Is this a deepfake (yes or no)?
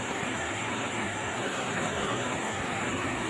yes